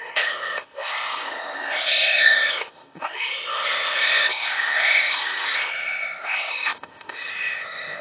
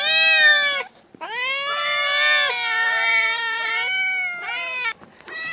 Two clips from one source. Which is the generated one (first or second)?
first